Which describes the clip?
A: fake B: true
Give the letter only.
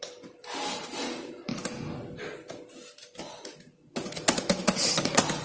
B